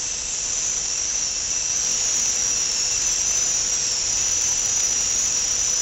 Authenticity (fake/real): real